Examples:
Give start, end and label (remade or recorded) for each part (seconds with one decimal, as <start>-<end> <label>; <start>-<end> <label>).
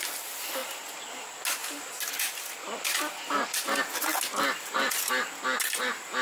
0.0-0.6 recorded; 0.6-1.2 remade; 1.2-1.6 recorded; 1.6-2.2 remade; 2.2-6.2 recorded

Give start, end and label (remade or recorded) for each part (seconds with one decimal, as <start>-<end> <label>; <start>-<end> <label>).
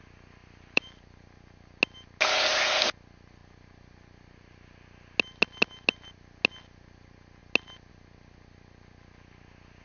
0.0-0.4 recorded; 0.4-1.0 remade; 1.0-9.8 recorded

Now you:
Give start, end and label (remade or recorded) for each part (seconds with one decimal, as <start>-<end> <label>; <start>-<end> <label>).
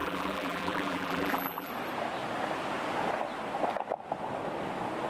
0.0-1.7 remade; 1.7-5.1 recorded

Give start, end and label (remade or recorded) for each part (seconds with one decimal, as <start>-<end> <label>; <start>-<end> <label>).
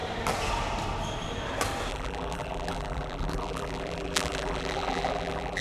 0.0-1.9 recorded; 1.9-5.6 remade